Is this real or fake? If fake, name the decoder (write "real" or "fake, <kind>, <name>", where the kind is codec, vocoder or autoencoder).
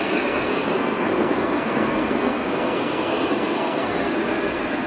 fake, codec, SNAC